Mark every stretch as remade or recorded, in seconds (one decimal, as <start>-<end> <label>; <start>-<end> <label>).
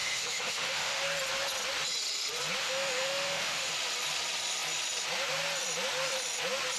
0.0-1.0 remade; 1.0-2.6 recorded; 2.6-3.7 remade; 3.7-6.8 recorded